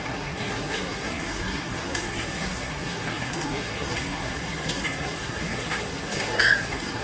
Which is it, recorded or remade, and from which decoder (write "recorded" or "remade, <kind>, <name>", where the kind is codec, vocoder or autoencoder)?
remade, codec, SNAC